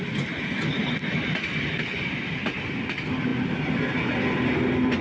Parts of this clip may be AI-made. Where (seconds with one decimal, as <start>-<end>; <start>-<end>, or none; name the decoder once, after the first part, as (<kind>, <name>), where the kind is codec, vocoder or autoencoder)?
none